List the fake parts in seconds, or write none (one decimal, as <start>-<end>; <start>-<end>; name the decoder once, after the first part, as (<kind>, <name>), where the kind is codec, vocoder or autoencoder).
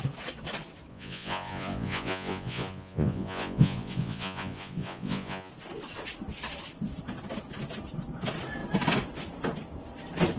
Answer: 0.9-5.5 (vocoder, Vocos)